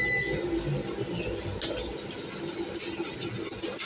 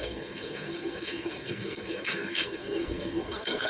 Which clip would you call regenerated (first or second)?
second